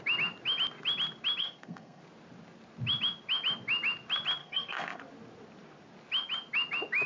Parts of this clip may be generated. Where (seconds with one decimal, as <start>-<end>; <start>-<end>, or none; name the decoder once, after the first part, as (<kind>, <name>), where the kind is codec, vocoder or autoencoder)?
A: 1.4-2.0 (codec, SNAC); 4.4-5.0